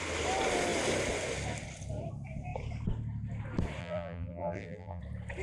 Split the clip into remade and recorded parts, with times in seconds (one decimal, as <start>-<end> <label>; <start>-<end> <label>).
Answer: 0.0-3.8 recorded; 3.8-5.0 remade; 5.0-5.4 recorded